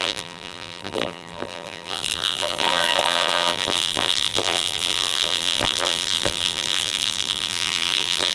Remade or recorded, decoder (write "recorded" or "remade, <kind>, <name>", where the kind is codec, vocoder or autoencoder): remade, vocoder, BigVGAN v2